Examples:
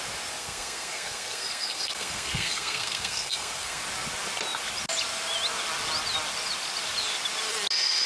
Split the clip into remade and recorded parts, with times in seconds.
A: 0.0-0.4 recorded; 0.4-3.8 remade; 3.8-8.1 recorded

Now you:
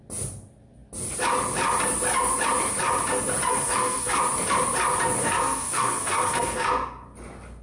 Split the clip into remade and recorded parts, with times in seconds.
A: 0.0-3.5 recorded; 3.5-4.2 remade; 4.2-5.2 recorded; 5.2-6.7 remade; 6.7-7.6 recorded

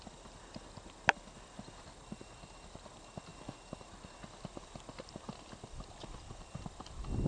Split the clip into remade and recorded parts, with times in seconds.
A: 0.0-7.3 recorded